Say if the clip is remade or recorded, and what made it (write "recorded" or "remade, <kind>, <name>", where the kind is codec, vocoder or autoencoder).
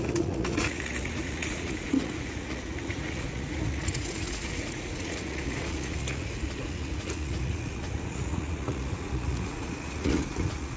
remade, vocoder, Vocos